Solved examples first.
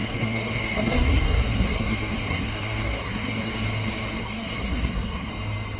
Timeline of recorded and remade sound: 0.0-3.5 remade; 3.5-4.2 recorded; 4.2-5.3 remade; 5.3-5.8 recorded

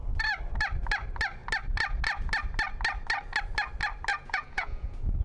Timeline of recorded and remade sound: 0.0-4.1 recorded; 4.1-5.2 remade

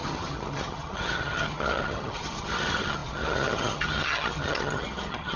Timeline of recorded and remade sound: 0.0-5.4 remade

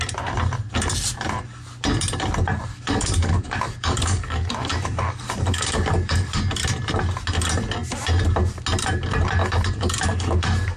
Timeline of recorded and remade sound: 0.0-2.7 recorded; 2.7-6.4 remade; 6.4-9.4 recorded; 9.4-10.8 remade

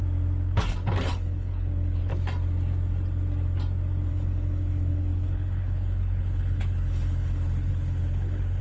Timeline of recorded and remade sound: 0.0-1.1 recorded; 1.1-2.1 remade; 2.1-4.1 recorded; 4.1-8.6 remade